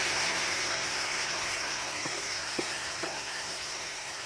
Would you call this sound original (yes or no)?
no